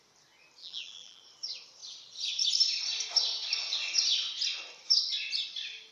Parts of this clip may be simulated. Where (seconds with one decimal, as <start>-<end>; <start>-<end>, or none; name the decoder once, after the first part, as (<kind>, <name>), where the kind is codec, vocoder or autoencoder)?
0.6-1.2 (vocoder, BigVGAN v2)